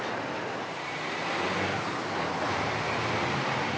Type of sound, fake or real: real